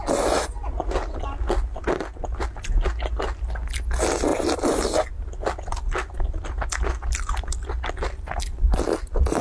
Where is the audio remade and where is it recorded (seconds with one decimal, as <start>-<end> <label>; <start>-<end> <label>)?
0.0-9.4 recorded